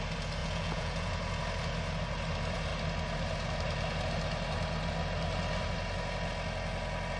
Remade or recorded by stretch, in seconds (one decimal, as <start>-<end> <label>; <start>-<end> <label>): 0.0-0.4 recorded; 0.4-1.1 remade; 1.1-7.2 recorded